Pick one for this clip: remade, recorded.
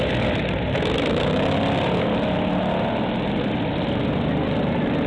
recorded